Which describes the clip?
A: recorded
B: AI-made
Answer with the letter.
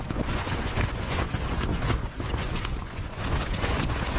B